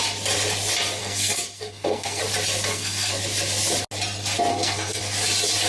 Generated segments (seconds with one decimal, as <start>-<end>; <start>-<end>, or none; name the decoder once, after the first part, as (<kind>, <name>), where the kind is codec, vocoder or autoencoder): 1.0-2.2 (codec, SNAC); 2.7-3.2; 4.5-5.0